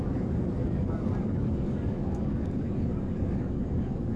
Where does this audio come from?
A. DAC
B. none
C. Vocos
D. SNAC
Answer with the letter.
A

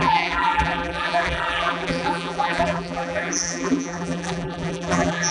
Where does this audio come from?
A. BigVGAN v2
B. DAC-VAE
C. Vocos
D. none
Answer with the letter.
A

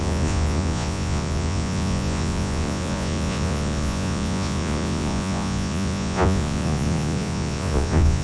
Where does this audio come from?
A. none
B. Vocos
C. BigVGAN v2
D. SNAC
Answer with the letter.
B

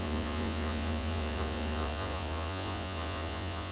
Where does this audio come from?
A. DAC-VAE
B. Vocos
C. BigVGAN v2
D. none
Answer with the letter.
B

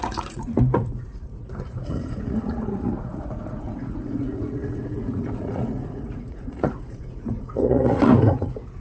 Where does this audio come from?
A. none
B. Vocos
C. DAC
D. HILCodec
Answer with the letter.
B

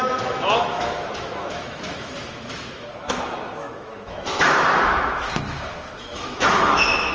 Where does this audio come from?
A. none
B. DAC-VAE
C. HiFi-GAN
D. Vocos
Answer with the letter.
B